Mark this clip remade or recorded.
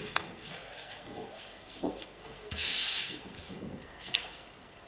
remade